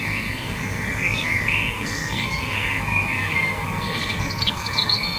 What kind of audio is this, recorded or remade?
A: remade